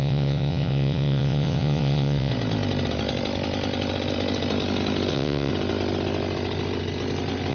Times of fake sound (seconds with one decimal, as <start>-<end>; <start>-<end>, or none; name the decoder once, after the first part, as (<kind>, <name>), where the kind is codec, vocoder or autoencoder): 0.0-2.3 (vocoder, WaveNeXt); 5.1-5.5